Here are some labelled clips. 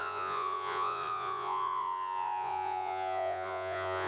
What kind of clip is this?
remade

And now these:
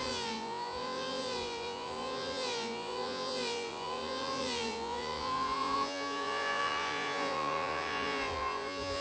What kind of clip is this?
remade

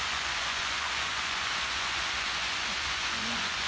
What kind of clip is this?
remade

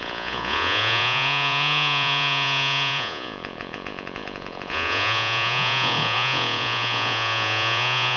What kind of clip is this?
remade